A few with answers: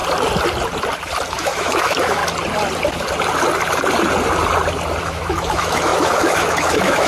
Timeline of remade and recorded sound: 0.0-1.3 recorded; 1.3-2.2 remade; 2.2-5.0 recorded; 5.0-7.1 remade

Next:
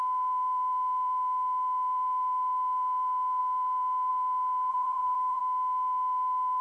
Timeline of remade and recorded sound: 0.0-4.7 recorded; 4.7-5.4 remade; 5.4-6.6 recorded

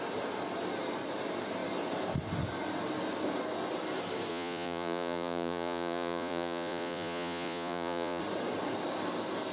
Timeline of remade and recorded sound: 0.0-4.3 recorded; 4.3-8.2 remade; 8.2-9.5 recorded